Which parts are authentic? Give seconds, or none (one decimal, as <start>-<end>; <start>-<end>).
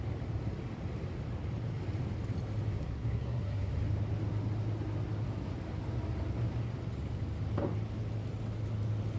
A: 0.0-2.7; 3.7-9.2